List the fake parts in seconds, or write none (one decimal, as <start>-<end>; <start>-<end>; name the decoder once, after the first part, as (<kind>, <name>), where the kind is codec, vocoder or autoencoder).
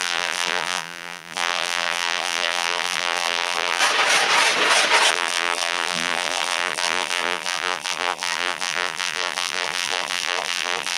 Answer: 0.0-3.8 (vocoder, BigVGAN v2); 5.1-11.0